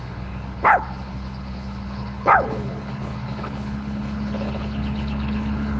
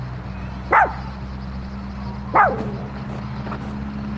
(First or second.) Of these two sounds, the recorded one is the second